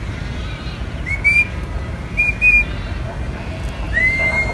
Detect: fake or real real